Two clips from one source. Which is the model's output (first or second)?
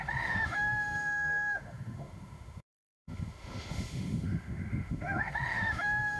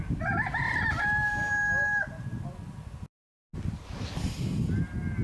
first